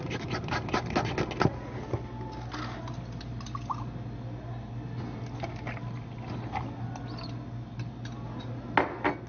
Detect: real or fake real